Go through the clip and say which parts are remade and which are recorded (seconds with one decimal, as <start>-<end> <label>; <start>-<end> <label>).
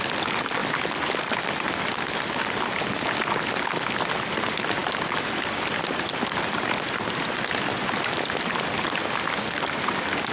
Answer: 0.0-4.8 recorded; 4.8-6.6 remade; 6.6-10.3 recorded